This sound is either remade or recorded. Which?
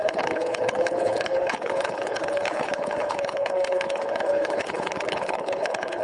remade